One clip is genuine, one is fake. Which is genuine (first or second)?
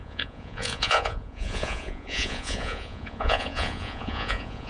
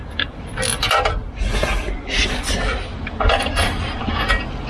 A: second